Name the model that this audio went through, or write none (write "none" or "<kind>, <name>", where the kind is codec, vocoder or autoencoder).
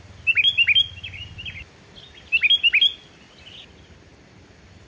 none